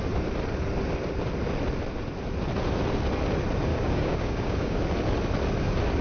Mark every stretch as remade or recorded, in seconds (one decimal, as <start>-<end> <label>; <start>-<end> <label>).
0.0-3.7 recorded; 3.7-4.8 remade; 4.8-6.0 recorded